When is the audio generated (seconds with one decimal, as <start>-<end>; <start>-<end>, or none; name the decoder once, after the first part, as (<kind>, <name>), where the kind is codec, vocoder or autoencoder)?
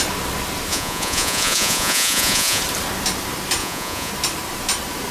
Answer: 0.7-2.6 (vocoder, Vocos); 3.6-4.1